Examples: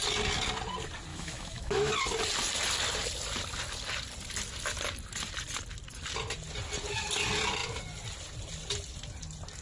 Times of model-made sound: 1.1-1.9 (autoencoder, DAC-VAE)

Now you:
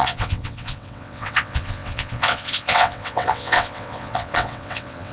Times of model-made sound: 0.0-5.1 (vocoder, WaveNeXt)

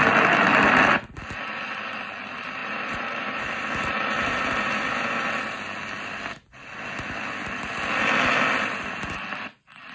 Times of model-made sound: 2.6-5.4 (vocoder, BigVGAN v2)

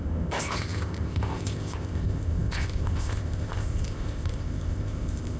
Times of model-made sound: 0.0-5.4 (codec, ZipCodec)

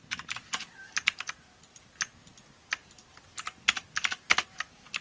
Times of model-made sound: none

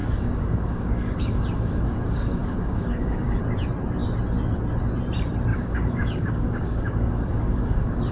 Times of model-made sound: 0.0-3.4 (codec, DAC); 5.5-8.1

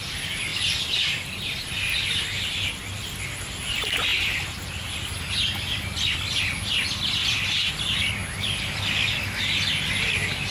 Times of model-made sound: 0.5-1.7 (vocoder, BigVGAN v2); 7.2-7.7

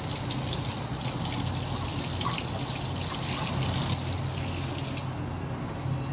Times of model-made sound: none